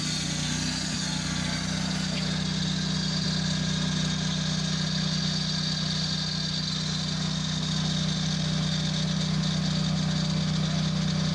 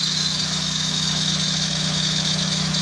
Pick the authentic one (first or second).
first